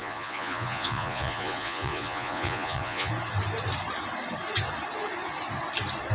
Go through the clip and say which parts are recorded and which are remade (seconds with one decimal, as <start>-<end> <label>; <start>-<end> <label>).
0.0-3.1 remade; 3.1-6.1 recorded